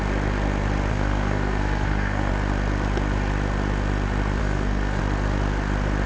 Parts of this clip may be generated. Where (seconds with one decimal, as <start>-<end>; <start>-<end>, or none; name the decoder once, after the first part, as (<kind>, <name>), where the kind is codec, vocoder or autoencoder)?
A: 0.9-2.3 (codec, SNAC); 4.4-5.0